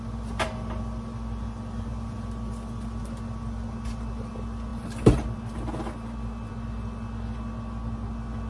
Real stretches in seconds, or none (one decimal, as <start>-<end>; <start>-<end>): 0.0-8.5